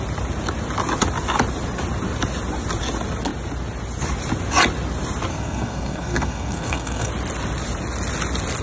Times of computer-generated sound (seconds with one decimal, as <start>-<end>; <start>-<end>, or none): 5.3-7.1